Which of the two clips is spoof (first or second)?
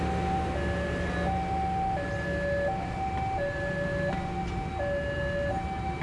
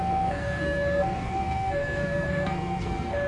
second